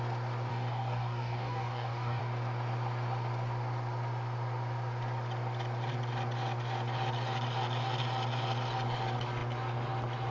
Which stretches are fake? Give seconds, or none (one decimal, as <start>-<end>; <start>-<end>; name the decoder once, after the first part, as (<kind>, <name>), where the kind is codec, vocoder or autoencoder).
0.5-2.2 (codec, DAC)